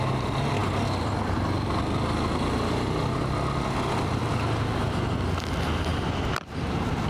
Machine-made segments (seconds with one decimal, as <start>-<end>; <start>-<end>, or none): none